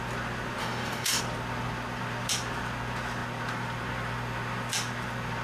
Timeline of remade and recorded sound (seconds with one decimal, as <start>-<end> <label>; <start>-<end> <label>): 0.0-0.6 recorded; 0.6-1.2 remade; 1.2-5.4 recorded

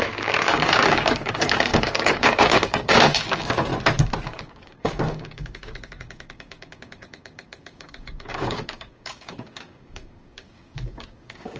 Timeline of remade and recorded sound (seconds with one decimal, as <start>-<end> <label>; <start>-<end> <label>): 0.0-3.7 remade; 3.7-4.2 recorded; 4.2-11.6 remade

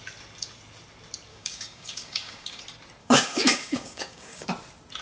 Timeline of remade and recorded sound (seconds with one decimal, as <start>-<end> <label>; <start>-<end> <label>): 0.0-1.3 recorded; 1.3-2.6 remade; 2.6-3.0 recorded; 3.0-4.5 remade; 4.5-5.0 recorded